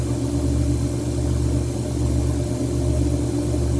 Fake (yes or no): no